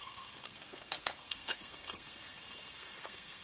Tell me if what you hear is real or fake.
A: fake